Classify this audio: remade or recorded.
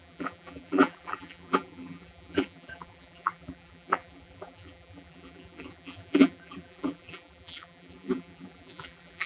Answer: remade